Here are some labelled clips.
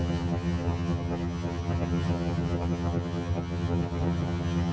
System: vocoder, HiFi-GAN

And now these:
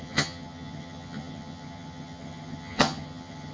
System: vocoder, HiFi-GAN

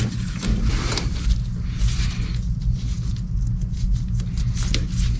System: none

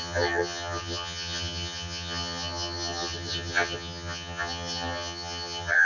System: vocoder, HiFi-GAN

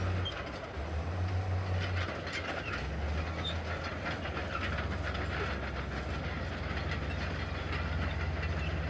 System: none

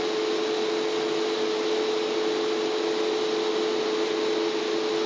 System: none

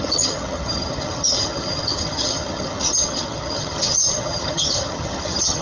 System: vocoder, HiFi-GAN